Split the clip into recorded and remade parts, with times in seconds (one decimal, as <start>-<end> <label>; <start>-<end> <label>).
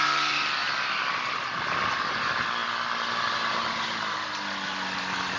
0.0-5.4 recorded